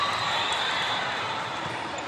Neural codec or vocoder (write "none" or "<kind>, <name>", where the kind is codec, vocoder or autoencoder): none